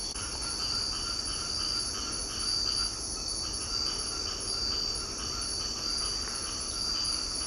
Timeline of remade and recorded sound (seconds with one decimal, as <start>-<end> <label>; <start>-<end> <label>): 0.0-1.8 remade; 1.8-6.8 recorded; 6.8-7.5 remade